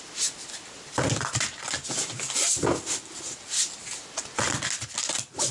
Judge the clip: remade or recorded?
recorded